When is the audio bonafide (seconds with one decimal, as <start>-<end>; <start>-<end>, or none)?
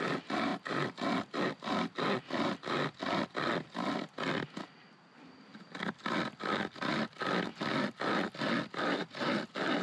0.0-9.8